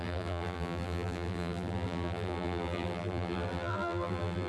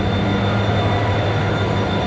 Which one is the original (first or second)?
second